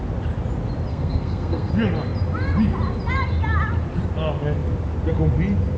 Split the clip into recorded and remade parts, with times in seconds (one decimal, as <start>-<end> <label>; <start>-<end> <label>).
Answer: 0.0-0.9 recorded; 0.9-1.7 remade; 1.7-5.8 recorded

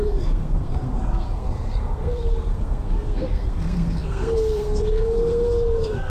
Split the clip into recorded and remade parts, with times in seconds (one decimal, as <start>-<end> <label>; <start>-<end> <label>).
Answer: 0.0-6.1 remade

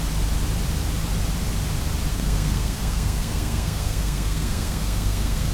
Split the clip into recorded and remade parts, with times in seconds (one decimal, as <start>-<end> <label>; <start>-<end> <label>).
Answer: 0.0-2.1 recorded; 2.1-5.5 remade